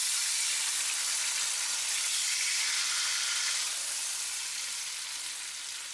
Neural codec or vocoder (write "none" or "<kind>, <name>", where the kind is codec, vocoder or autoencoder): none